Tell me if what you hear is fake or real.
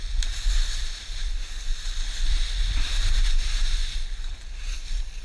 real